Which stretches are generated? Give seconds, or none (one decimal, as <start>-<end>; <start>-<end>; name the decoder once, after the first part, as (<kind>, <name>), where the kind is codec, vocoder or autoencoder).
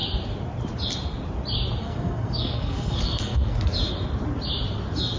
1.8-3.6 (codec, SNAC)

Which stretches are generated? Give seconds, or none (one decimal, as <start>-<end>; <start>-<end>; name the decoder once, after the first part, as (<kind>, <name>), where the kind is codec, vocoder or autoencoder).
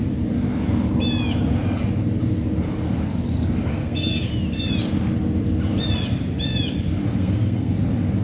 3.7-4.3 (codec, SNAC); 7.1-7.7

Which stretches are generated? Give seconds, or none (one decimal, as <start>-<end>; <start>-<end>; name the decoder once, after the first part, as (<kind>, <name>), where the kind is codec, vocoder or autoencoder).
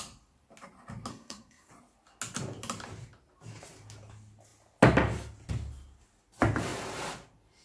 1.1-1.7 (codec, SNAC)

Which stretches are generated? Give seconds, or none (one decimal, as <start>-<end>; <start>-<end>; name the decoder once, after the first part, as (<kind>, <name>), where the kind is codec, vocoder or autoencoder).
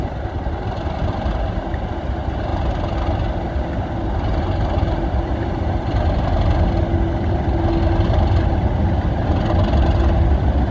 none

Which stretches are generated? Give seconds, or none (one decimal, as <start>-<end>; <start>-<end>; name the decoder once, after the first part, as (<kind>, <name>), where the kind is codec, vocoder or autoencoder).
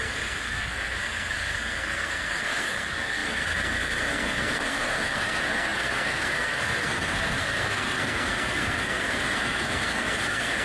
0.0-10.6 (codec, SNAC)